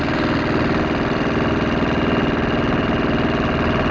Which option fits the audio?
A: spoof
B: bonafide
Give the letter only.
B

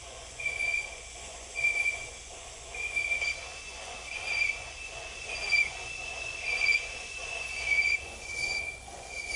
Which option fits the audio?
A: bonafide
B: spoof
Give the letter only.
B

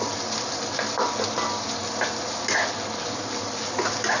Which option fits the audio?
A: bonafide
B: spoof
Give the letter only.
A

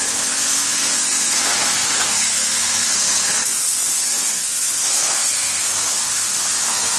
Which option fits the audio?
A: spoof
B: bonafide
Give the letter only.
A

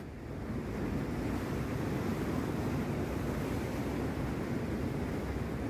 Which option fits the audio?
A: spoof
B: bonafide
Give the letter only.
B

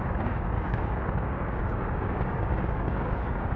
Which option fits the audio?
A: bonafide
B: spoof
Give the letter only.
B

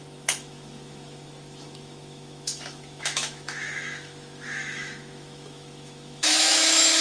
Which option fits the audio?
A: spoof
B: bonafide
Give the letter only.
A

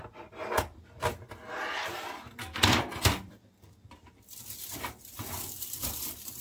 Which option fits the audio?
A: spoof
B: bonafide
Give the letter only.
A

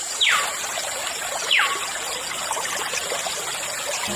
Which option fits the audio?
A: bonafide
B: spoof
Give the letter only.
A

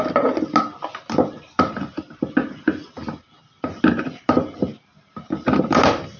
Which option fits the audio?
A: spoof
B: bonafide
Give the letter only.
B